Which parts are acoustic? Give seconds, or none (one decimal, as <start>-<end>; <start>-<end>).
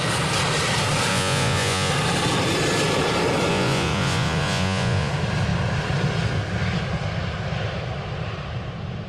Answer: 0.0-1.1; 1.9-3.5; 5.1-9.1